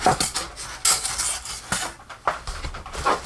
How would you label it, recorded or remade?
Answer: recorded